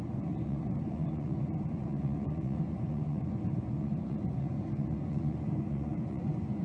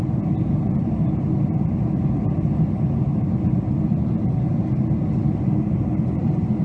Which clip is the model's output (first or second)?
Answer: first